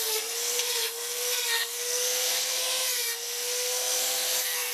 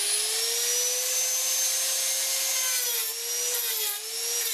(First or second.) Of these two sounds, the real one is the second